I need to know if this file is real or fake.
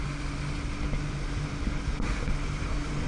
real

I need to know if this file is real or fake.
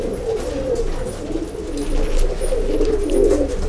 real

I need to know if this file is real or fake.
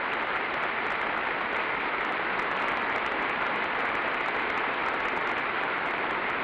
real